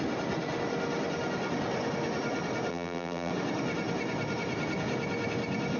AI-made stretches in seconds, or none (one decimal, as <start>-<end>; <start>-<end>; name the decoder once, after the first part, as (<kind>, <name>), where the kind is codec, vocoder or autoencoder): 2.7-3.3 (vocoder, BigVGAN v2)